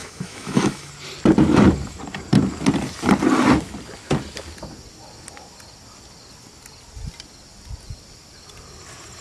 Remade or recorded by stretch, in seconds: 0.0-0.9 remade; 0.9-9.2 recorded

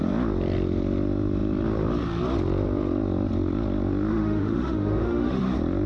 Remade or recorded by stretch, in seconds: 0.0-4.1 recorded; 4.1-5.4 remade; 5.4-5.9 recorded

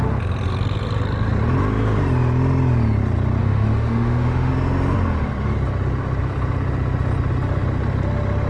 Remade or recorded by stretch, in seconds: 0.0-3.4 recorded; 3.4-4.5 remade; 4.5-8.5 recorded

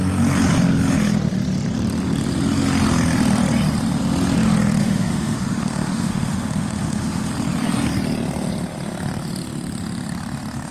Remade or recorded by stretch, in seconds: 0.0-4.8 recorded; 4.8-7.3 remade; 7.3-10.7 recorded

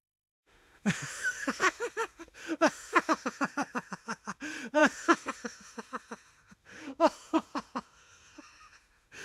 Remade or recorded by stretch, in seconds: 0.0-9.2 remade

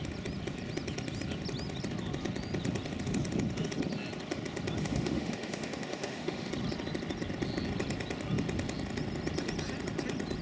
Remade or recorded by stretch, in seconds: 0.0-4.8 recorded; 4.8-6.5 remade; 6.5-10.4 recorded